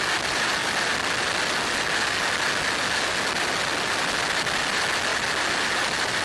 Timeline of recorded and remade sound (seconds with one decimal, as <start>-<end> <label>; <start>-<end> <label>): 0.0-6.2 recorded